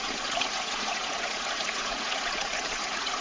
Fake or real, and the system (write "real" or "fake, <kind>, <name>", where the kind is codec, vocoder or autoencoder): fake, vocoder, Vocos